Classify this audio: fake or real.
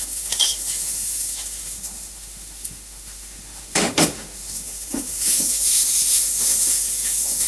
fake